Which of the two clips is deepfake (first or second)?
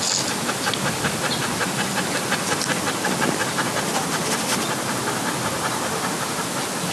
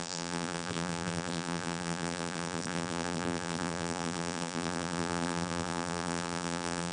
second